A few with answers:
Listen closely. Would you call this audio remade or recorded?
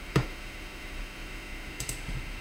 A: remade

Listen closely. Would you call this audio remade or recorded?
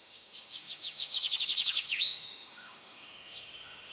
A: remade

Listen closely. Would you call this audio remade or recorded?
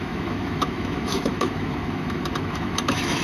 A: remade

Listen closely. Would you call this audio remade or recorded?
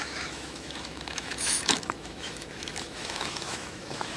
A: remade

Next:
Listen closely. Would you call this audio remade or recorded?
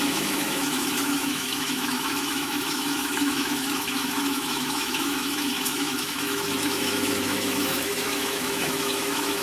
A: remade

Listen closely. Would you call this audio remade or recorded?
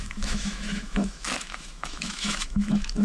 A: remade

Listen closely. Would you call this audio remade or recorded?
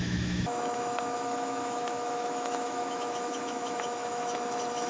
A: remade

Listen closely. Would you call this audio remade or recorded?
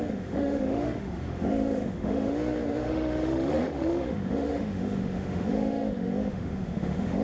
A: remade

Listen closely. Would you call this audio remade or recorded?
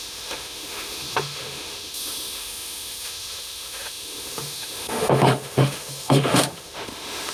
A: remade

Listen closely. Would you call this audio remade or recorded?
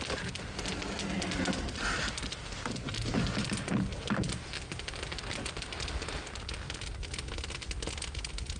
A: recorded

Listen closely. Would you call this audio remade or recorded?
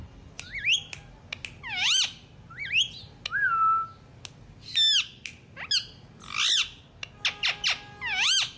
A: recorded